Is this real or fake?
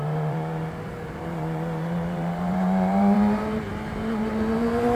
fake